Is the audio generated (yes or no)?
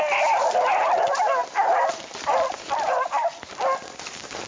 no